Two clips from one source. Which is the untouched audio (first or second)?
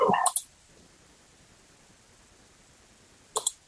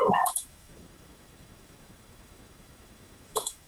first